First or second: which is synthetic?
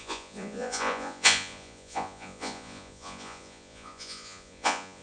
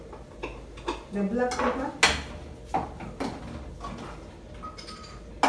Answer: first